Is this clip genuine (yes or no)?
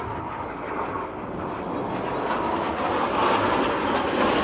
yes